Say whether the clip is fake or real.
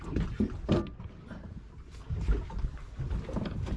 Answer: real